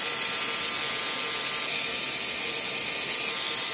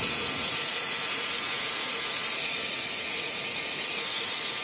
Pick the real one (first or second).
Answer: first